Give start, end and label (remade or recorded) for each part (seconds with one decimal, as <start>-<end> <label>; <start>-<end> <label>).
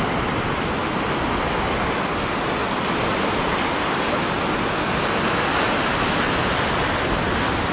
0.0-2.6 recorded; 2.6-4.1 remade; 4.1-7.7 recorded